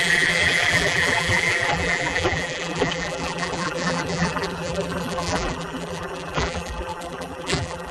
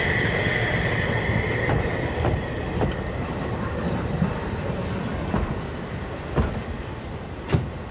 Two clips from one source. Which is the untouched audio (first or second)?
second